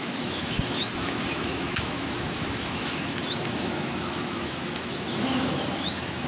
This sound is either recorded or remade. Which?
remade